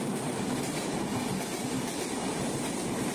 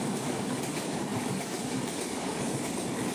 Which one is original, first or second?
first